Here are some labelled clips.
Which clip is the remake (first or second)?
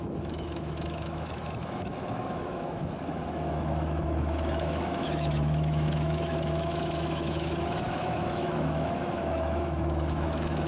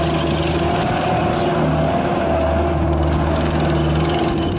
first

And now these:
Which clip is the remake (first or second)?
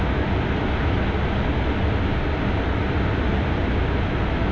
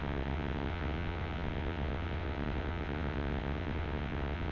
second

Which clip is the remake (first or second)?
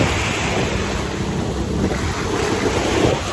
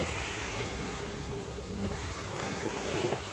second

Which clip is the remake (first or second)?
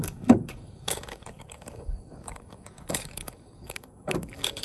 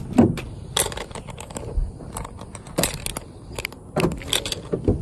first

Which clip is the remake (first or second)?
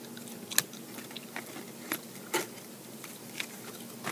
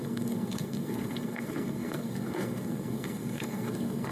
second